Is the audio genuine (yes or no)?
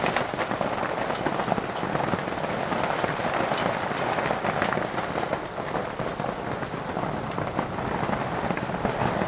yes